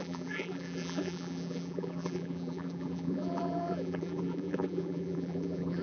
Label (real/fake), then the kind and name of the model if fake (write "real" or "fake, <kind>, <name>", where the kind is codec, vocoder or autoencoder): fake, vocoder, BigVGAN v2